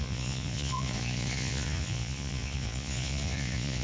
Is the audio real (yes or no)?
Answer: no